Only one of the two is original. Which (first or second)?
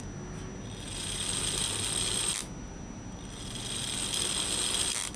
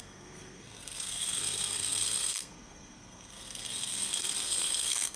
first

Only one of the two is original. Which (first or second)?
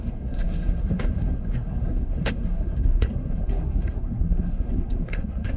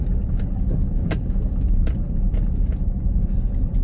second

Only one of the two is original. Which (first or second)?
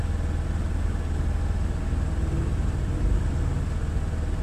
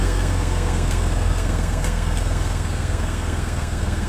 first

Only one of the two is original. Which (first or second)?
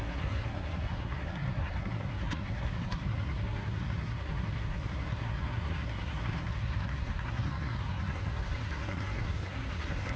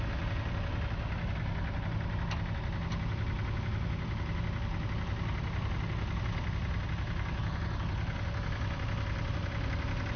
second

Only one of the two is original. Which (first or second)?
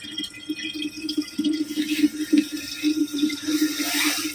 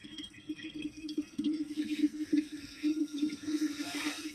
first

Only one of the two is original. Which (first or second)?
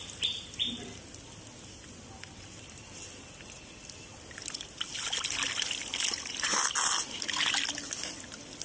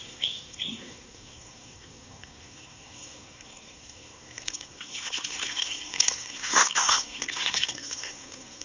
first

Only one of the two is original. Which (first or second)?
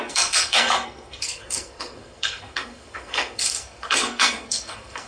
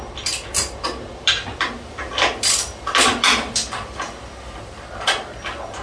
second